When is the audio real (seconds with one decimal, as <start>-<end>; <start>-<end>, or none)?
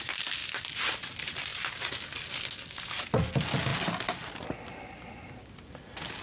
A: 0.0-0.4; 1.0-6.2